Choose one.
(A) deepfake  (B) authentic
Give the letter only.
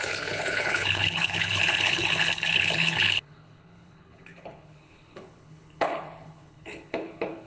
A